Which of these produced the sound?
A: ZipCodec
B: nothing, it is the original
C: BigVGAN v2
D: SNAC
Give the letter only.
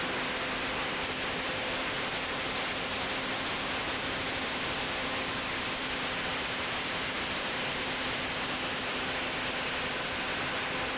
C